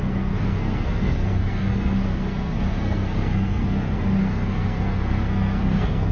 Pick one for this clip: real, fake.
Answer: fake